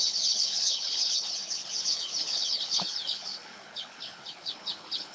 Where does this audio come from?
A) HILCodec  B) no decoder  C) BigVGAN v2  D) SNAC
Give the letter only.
A